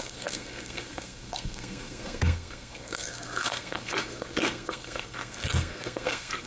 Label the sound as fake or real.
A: fake